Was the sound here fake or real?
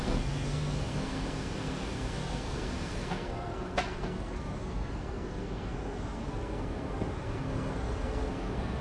fake